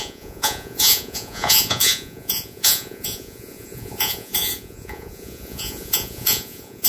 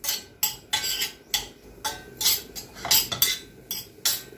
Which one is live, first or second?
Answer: second